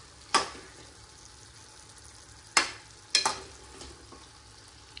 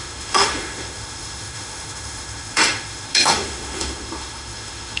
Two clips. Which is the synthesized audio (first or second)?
second